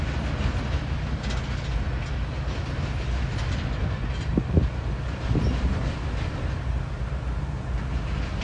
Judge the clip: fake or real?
real